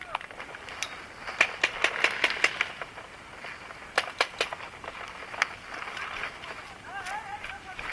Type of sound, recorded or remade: recorded